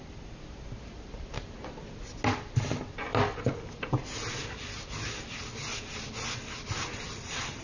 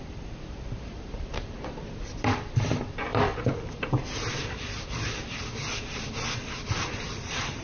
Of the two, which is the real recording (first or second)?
first